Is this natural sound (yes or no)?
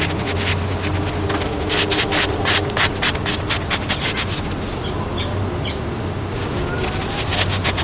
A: yes